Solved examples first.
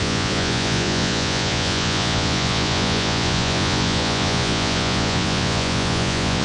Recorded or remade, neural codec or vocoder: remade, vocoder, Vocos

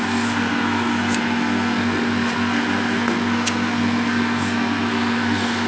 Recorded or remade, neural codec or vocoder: remade, codec, SNAC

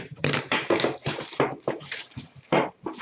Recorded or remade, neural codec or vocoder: remade, vocoder, BigVGAN v2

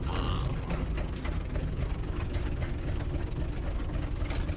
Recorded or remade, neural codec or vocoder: recorded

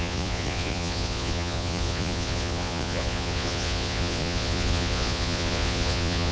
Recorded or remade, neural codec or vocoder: remade, vocoder, Vocos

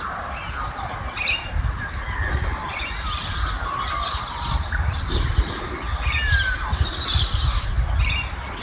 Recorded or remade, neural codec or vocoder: recorded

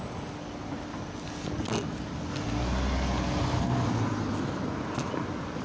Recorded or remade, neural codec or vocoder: recorded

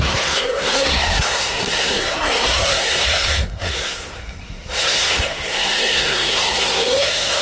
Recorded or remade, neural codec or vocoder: remade, codec, SNAC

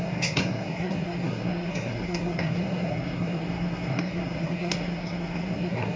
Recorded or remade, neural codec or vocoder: remade, codec, SNAC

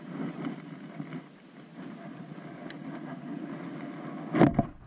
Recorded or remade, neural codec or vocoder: recorded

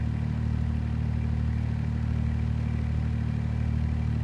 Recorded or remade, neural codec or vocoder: recorded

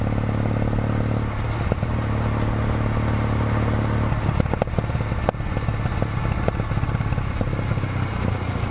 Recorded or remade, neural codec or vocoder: recorded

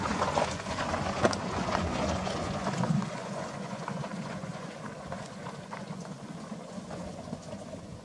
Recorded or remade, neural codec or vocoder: remade, vocoder, Vocos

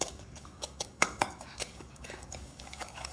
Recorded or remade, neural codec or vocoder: remade, codec, DAC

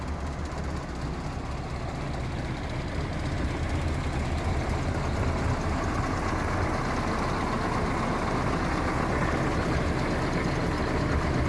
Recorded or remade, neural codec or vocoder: recorded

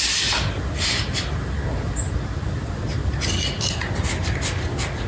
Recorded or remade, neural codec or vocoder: recorded